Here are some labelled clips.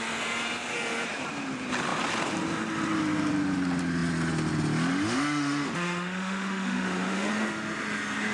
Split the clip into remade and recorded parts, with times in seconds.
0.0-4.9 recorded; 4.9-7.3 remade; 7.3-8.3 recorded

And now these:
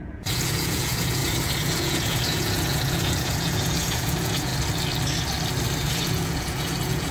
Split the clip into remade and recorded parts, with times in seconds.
0.0-4.5 remade; 4.5-5.8 recorded; 5.8-7.1 remade

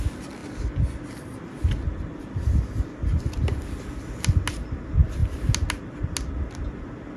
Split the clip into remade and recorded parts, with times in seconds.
0.0-7.2 recorded

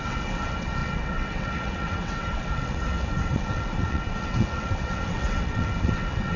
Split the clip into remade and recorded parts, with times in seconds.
0.0-6.4 remade

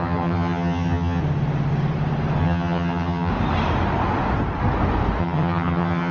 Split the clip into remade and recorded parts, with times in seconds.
0.0-1.2 remade; 1.2-2.4 recorded; 2.4-3.3 remade; 3.3-5.2 recorded; 5.2-6.1 remade

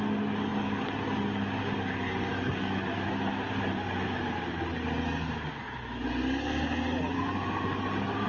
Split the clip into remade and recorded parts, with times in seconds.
0.0-8.3 recorded

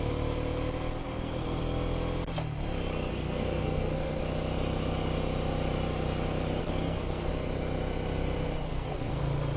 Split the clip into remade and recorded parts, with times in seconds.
0.0-1.0 recorded; 1.0-1.6 remade; 1.6-3.1 recorded; 3.1-4.2 remade; 4.2-6.6 recorded; 6.6-7.3 remade; 7.3-8.7 recorded; 8.7-9.2 remade; 9.2-9.6 recorded

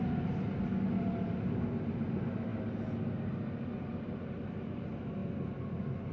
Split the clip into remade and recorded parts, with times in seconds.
0.0-6.1 recorded